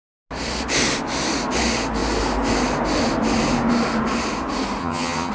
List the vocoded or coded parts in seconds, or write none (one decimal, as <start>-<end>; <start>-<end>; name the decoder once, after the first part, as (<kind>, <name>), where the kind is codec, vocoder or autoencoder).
4.8-5.3 (vocoder, HiFi-GAN)